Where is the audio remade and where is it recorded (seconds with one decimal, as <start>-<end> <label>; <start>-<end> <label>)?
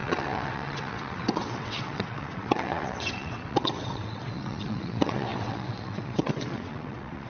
0.0-7.3 remade